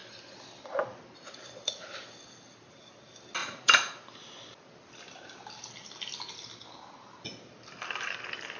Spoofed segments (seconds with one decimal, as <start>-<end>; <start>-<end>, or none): 3.4-4.1